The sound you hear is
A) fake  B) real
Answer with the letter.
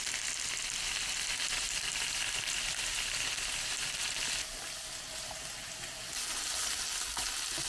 B